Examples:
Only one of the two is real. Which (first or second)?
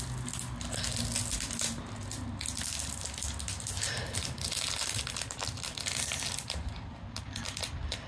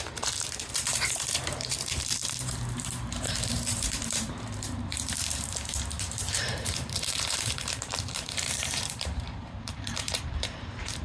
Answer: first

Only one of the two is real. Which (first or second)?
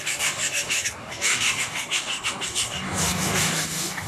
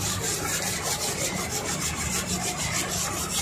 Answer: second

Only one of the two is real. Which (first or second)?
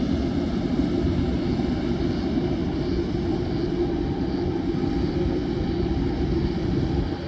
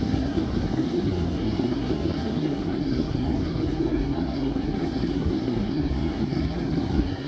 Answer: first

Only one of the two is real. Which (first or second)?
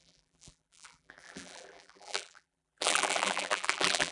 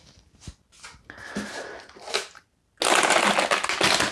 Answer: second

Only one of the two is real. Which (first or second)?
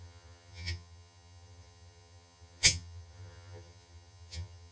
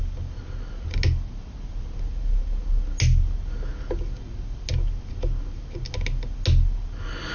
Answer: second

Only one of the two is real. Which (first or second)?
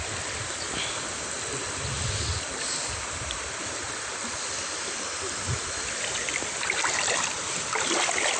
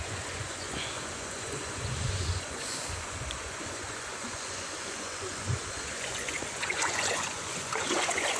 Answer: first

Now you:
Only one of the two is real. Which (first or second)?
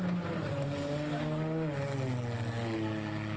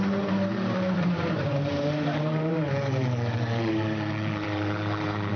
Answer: first